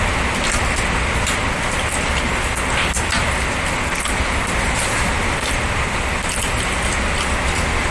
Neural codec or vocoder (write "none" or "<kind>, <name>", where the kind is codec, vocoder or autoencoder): none